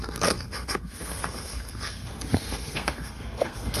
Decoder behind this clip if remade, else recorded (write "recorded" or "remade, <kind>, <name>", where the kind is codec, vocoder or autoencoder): remade, codec, SNAC